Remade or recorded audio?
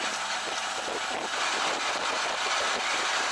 recorded